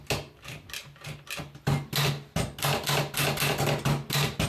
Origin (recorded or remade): recorded